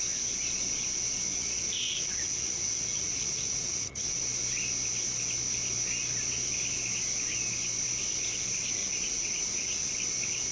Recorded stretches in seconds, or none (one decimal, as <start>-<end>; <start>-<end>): 0.0-1.3; 4.2-8.8; 9.9-10.5